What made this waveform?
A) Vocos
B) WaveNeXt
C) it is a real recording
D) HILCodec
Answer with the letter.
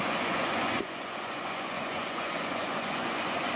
A